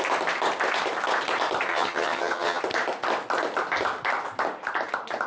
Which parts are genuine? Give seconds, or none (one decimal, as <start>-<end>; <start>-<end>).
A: 0.0-1.7; 2.6-5.3